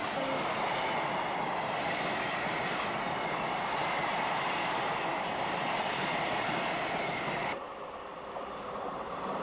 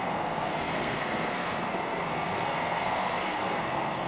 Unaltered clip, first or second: first